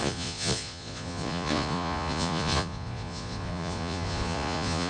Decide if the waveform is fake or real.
fake